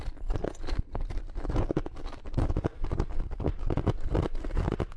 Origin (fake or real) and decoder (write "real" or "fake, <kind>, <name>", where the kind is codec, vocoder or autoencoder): real